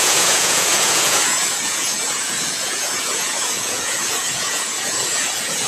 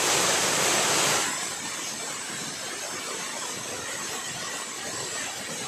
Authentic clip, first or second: second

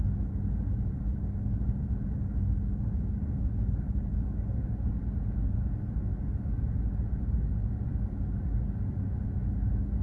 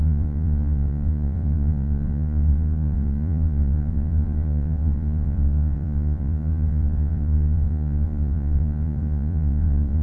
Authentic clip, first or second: first